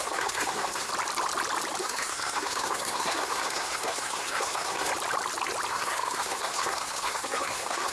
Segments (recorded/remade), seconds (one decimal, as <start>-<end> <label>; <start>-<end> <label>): 0.0-0.9 remade; 0.9-1.8 recorded; 1.8-4.9 remade; 4.9-5.7 recorded; 5.7-7.9 remade